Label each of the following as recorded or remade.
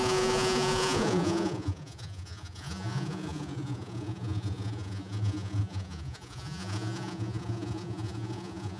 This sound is remade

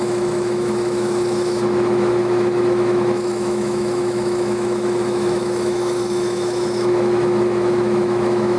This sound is remade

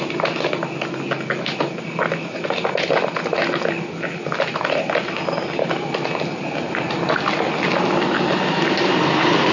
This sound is recorded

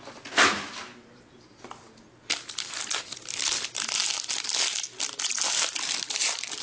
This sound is recorded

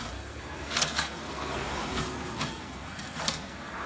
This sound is remade